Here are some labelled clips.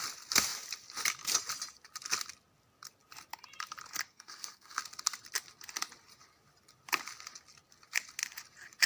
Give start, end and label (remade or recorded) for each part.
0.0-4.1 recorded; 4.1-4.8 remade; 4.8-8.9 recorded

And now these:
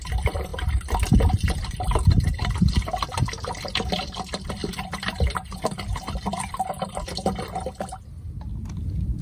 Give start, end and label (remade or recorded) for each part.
0.0-9.2 recorded

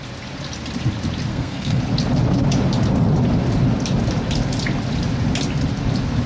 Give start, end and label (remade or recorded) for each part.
0.0-1.3 recorded; 1.3-1.8 remade; 1.8-6.3 recorded